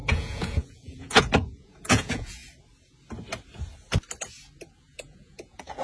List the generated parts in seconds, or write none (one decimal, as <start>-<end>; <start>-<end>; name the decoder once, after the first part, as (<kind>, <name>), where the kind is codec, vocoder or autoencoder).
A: 0.0-2.4 (vocoder, Vocos); 4.8-5.8